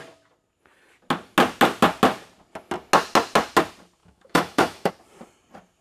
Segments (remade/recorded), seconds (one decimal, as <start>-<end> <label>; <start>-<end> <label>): 0.0-4.0 recorded; 4.0-4.9 remade; 4.9-5.8 recorded